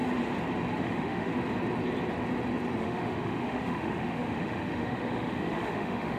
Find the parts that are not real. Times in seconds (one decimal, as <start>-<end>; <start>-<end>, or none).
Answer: 0.8-1.3; 2.8-6.2